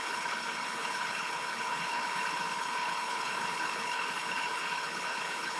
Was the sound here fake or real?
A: fake